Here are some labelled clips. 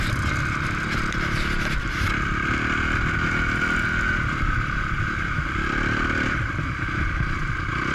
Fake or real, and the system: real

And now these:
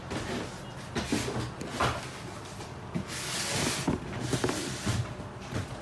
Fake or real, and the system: real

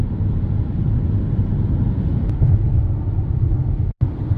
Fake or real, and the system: real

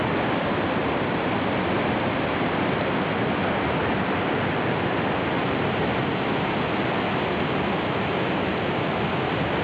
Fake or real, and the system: real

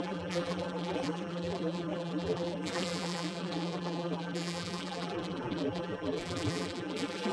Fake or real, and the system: fake, vocoder, BigVGAN v2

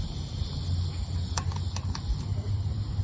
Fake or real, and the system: real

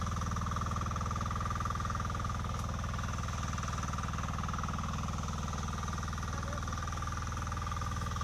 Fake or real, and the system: real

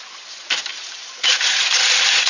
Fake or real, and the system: fake, vocoder, BigVGAN v2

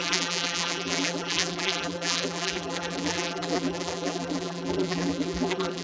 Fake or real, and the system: fake, vocoder, BigVGAN v2